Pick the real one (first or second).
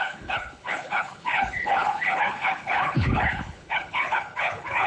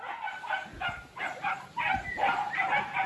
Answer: second